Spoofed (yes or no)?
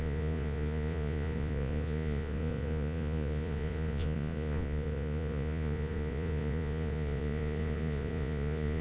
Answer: yes